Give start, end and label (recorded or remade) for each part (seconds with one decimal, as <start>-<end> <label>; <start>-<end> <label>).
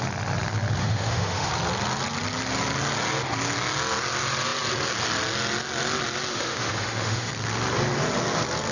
0.0-0.8 recorded; 0.8-1.5 remade; 1.5-6.3 recorded; 6.3-7.3 remade; 7.3-8.7 recorded